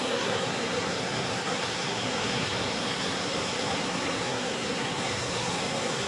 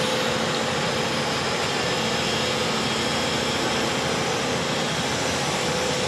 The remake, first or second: first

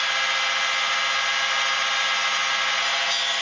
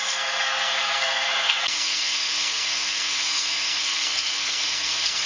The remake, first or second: second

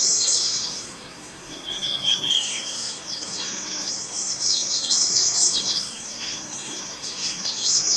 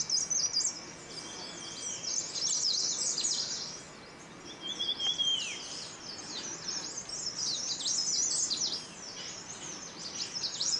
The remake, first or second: first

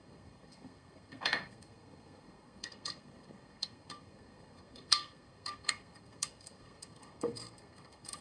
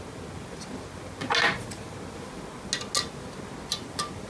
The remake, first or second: first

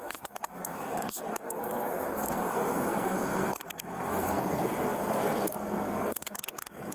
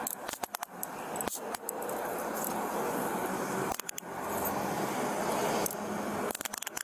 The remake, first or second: first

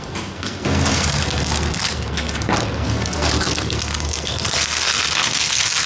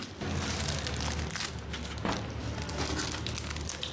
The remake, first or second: first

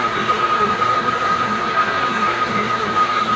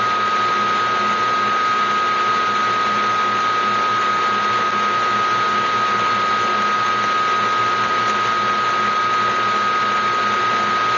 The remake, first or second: first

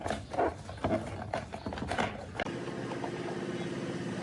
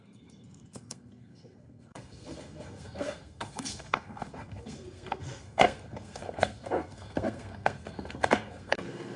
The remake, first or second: second